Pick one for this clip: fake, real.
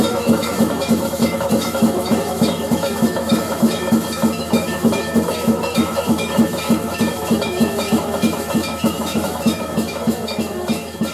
fake